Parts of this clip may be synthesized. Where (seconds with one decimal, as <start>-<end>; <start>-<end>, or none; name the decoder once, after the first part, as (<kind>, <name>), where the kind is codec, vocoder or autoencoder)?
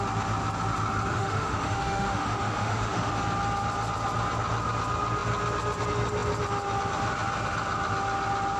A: 1.1-3.1 (autoencoder, DAC-VAE)